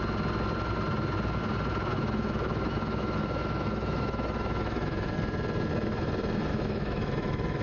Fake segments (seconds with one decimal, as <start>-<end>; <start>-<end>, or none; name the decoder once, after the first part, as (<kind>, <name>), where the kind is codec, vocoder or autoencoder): 1.9-5.2 (autoencoder, DAC-VAE); 6.5-7.6

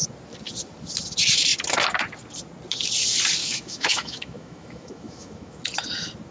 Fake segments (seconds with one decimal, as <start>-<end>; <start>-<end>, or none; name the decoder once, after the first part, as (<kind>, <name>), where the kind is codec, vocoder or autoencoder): 3.4-5.6 (autoencoder, DAC-VAE)